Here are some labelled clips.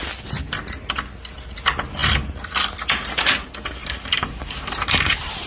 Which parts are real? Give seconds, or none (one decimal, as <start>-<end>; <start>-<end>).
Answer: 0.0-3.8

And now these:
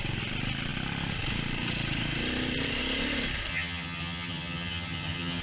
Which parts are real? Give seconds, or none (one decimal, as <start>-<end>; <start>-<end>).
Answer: 0.0-3.5

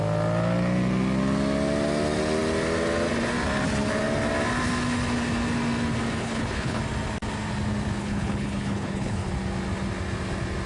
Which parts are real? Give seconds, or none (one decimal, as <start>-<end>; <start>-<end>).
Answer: 0.0-6.2; 6.8-8.0; 9.3-10.7

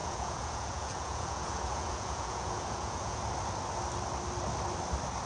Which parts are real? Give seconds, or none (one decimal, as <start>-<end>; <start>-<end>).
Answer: 3.2-5.3

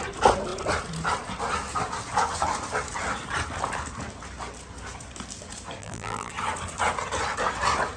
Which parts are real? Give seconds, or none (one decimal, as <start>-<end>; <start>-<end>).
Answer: 0.0-5.8; 6.3-8.0

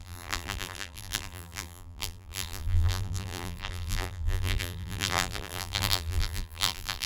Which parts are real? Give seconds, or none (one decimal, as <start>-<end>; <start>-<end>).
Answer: none

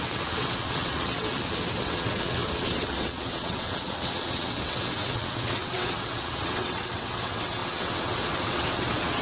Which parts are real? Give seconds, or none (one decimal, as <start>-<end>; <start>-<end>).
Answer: none